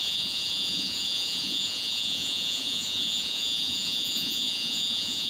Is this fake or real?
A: fake